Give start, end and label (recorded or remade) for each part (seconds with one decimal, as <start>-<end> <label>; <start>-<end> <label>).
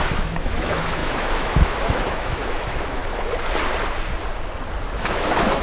0.0-3.0 remade; 3.0-5.0 recorded; 5.0-5.6 remade